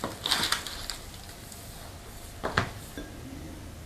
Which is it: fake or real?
real